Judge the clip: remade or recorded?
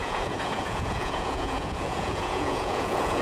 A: remade